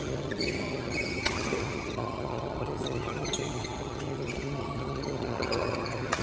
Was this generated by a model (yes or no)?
yes